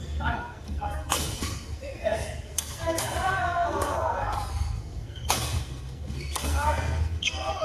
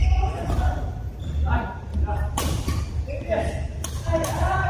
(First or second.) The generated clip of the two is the first